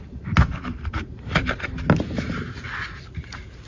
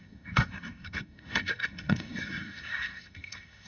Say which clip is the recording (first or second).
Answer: first